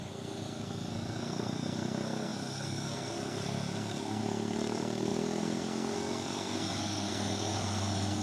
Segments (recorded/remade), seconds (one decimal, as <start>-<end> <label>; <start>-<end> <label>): 0.0-8.2 remade